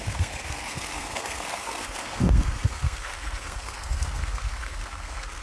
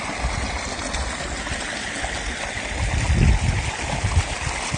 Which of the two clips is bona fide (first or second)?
second